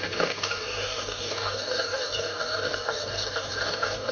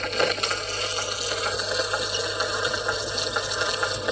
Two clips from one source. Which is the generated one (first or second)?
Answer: first